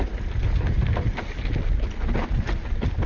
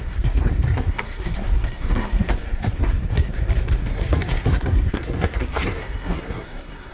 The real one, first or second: first